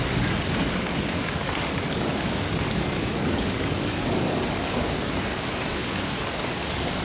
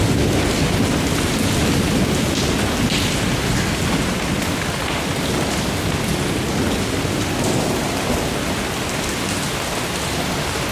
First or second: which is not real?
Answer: first